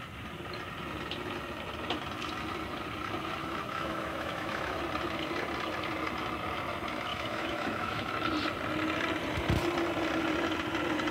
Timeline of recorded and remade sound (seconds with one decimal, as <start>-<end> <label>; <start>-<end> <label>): 0.0-3.4 recorded; 3.4-4.8 remade; 4.8-7.1 recorded; 7.1-8.1 remade; 8.1-11.1 recorded